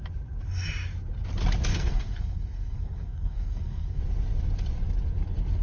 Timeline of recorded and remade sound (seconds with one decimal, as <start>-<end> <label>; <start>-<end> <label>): 0.0-1.7 recorded; 1.7-4.0 remade; 4.0-5.6 recorded